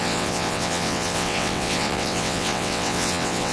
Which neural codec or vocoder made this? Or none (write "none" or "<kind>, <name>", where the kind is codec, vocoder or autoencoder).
vocoder, WaveNeXt